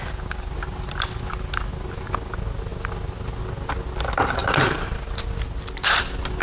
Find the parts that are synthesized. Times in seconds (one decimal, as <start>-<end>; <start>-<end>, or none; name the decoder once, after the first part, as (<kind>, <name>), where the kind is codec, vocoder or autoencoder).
4.4-5.0 (vocoder, BigVGAN v2)